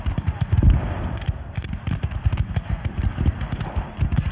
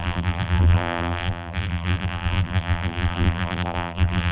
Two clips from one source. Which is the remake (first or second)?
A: second